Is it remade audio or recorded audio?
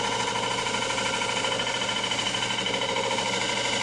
recorded